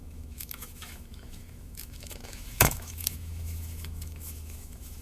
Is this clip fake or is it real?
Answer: fake